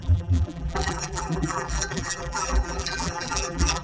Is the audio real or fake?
fake